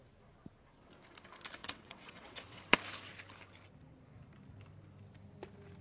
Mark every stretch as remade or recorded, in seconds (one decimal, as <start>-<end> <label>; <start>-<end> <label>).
0.0-1.6 recorded; 1.6-2.6 remade; 2.6-5.8 recorded